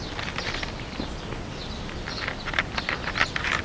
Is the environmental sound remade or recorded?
recorded